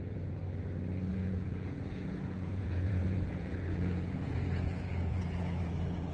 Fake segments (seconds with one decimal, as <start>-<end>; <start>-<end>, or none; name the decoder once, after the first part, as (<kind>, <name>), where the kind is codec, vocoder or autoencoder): 0.0-0.4 (vocoder, Vocos); 1.1-6.1